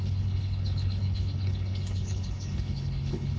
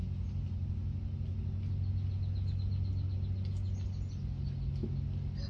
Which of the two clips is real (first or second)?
second